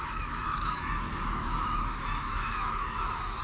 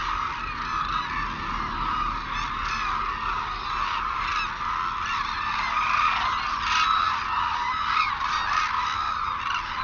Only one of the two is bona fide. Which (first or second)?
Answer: second